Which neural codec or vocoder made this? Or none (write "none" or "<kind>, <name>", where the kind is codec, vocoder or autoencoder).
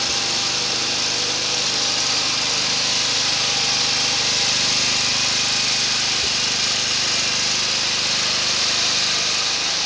none